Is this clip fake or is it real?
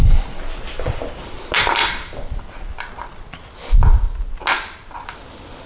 real